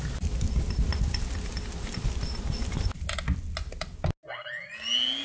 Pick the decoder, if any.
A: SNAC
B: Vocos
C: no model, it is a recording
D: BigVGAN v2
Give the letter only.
C